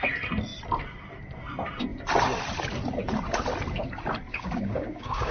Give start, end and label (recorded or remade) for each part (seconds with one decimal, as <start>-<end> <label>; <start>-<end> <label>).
0.0-4.3 recorded; 4.3-5.3 remade